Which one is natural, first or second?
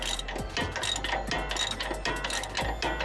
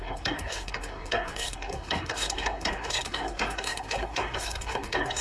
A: first